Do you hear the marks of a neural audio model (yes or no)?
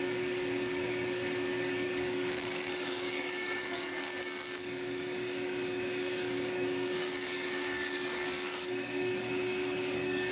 yes